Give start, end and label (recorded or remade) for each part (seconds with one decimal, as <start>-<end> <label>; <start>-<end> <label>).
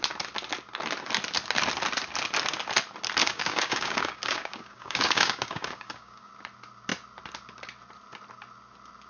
0.0-3.2 recorded; 3.2-6.3 remade; 6.3-9.1 recorded